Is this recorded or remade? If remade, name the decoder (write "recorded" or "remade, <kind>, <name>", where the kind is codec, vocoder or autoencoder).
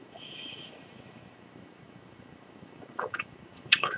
remade, autoencoder, DAC-VAE